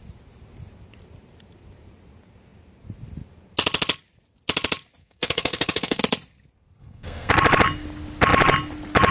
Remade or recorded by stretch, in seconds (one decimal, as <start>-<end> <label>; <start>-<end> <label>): 0.0-5.0 recorded; 5.0-6.0 remade; 6.0-6.8 recorded; 6.8-7.3 remade; 7.3-9.1 recorded